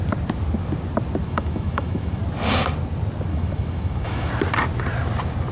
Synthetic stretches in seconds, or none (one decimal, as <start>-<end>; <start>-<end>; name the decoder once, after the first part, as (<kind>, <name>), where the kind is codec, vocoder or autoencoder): 1.2-2.2 (autoencoder, DAC-VAE); 3.3-4.3

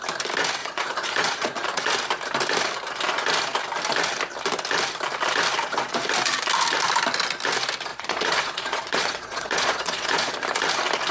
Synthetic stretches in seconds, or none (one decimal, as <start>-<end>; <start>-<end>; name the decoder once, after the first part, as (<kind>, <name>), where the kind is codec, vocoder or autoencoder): 0.6-1.9 (vocoder, Vocos); 7.9-10.3

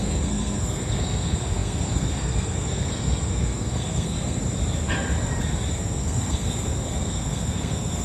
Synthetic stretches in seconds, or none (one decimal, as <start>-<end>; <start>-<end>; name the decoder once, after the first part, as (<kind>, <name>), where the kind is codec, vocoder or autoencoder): 0.0-4.4 (codec, SNAC); 5.7-8.0

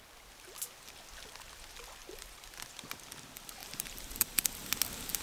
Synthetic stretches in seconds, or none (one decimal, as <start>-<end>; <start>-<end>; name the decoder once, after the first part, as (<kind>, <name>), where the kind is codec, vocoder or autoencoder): 2.0-2.5 (vocoder, BigVGAN v2); 3.6-4.6